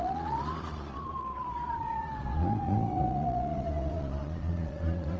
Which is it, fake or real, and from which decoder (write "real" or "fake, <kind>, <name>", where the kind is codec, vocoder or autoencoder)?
fake, vocoder, Vocos